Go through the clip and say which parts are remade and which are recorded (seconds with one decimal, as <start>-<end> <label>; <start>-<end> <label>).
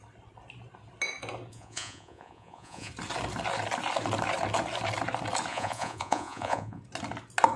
0.0-1.5 recorded; 1.5-2.9 remade; 2.9-5.5 recorded; 5.5-6.8 remade; 6.8-7.6 recorded